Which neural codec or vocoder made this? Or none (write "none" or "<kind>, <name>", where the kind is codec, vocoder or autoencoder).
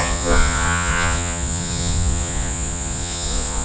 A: vocoder, Vocos